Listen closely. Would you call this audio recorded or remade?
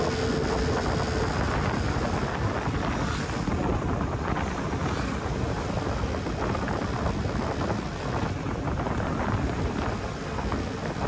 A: recorded